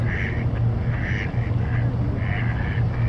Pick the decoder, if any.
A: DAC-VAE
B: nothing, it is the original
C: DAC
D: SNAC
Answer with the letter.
B